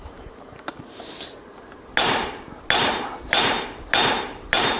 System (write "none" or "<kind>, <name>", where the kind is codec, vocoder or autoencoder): none